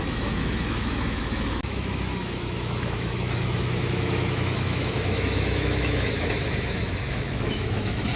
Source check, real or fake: fake